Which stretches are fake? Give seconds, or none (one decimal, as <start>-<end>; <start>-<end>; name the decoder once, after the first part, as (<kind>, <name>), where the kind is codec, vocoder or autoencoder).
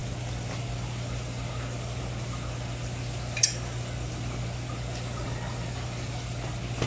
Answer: none